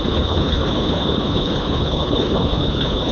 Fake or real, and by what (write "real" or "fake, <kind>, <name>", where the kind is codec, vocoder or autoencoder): fake, codec, HILCodec